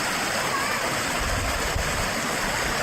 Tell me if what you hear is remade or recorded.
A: recorded